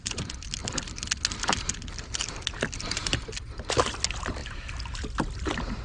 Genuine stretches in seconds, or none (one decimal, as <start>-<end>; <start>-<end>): 0.0-5.8